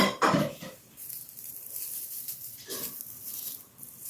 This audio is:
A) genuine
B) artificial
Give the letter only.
B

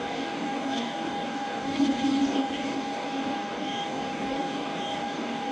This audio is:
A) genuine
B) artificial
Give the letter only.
B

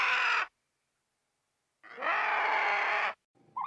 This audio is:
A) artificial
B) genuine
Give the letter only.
B